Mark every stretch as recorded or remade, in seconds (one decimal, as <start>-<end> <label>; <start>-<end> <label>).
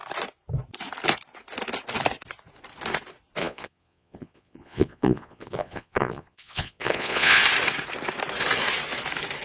0.0-3.4 recorded; 3.4-7.4 remade; 7.4-9.4 recorded